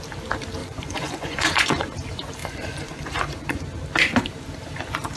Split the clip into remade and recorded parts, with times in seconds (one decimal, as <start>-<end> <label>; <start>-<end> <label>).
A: 0.0-0.6 recorded; 0.6-1.8 remade; 1.8-2.4 recorded; 2.4-3.6 remade; 3.6-5.2 recorded